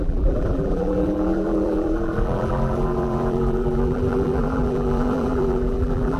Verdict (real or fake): fake